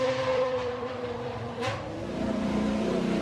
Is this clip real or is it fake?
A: fake